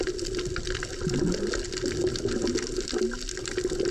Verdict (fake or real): real